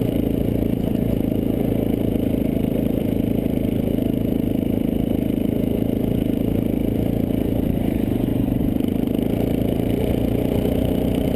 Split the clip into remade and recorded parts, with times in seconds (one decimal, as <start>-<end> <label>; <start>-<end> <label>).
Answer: 0.0-6.8 remade; 6.8-7.3 recorded; 7.3-11.4 remade